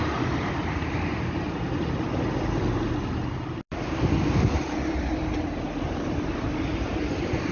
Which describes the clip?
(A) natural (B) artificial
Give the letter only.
A